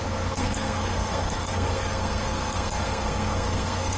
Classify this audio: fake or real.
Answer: fake